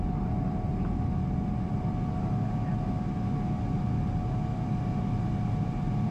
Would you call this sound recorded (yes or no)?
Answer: yes